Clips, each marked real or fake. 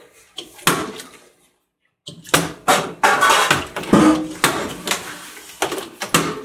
real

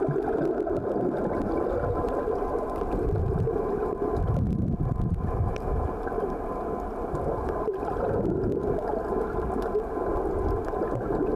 real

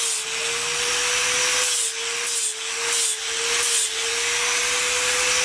real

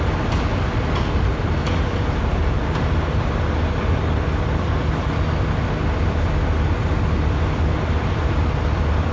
real